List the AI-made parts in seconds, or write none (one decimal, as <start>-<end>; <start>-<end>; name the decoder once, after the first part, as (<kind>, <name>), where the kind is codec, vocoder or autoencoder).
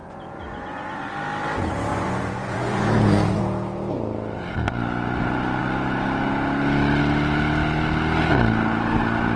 0.0-1.1 (vocoder, Vocos); 1.9-3.4